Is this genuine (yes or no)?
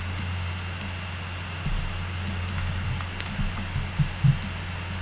yes